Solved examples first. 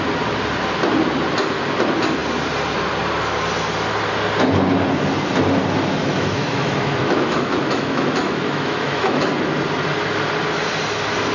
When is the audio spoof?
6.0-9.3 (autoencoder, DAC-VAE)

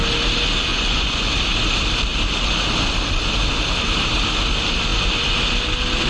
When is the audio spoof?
0.7-1.3 (vocoder, Vocos)

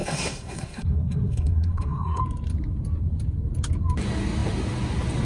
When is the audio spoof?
0.0-2.2 (codec, SNAC)

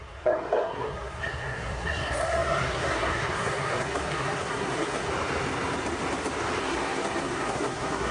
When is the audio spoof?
0.0-5.1 (codec, SNAC); 6.6-8.1

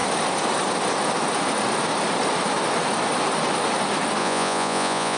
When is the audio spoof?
4.2-5.2 (vocoder, Vocos)

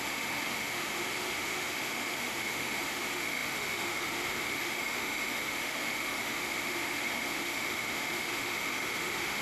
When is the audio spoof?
0.0-9.4 (autoencoder, DAC-VAE)